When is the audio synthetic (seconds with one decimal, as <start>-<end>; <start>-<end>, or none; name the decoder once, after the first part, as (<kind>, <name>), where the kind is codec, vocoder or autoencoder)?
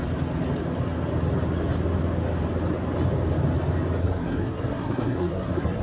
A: 4.0-5.8 (codec, SNAC)